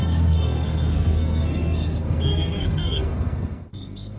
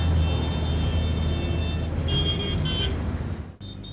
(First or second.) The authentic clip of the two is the second